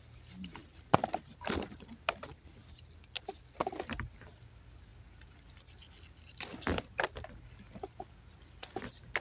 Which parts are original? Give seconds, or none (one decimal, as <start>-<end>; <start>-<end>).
none